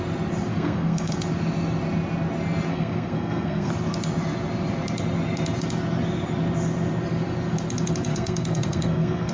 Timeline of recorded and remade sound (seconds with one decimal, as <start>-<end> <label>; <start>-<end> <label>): 0.0-0.5 recorded; 0.5-1.1 remade; 1.1-2.7 recorded; 2.7-3.7 remade; 3.7-8.1 recorded; 8.1-9.3 remade